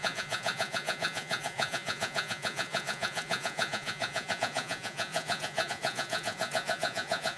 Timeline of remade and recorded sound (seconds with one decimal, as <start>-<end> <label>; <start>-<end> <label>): 0.0-7.4 remade